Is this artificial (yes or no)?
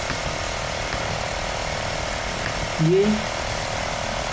no